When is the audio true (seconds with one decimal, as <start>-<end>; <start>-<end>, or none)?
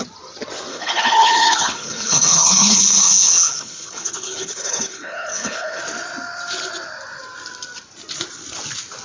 0.0-0.7; 5.8-9.0